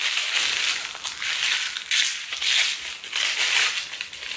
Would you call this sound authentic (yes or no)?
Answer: yes